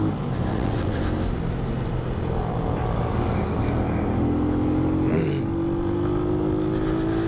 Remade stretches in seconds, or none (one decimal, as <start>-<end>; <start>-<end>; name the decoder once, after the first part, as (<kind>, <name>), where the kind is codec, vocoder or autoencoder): 0.5-1.0 (vocoder, WaveNeXt)